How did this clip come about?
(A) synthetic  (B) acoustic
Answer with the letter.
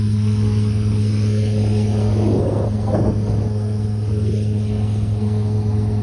A